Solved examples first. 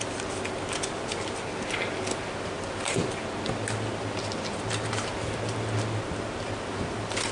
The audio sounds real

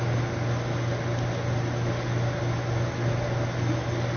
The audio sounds real